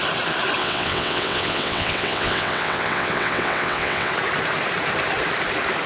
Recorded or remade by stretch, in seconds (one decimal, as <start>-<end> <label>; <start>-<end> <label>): 0.0-0.6 recorded; 0.6-4.1 remade; 4.1-5.9 recorded